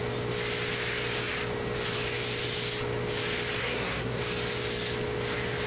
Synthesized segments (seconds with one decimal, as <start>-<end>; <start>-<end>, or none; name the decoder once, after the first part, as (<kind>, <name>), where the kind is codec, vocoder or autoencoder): 3.6-4.2 (codec, SNAC)